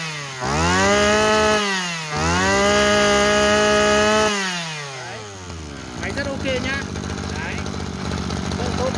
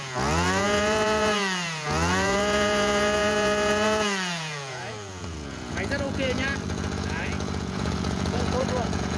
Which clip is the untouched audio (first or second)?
first